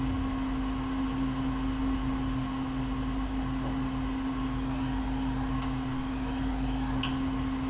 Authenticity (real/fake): real